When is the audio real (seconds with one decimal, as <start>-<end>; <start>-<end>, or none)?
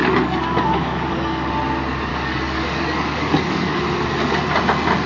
1.5-2.1; 3.8-5.1